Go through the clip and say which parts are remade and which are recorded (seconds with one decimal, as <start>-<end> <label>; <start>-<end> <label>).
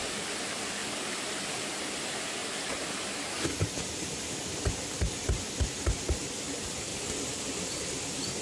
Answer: 0.0-8.4 recorded